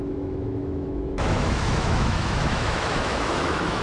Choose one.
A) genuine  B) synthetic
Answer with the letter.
B